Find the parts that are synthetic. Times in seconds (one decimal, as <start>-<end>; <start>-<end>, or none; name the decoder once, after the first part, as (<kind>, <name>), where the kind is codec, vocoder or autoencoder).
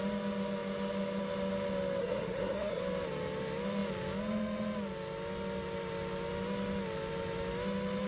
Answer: 2.0-2.8 (codec, SNAC)